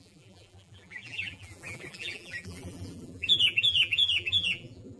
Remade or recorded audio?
remade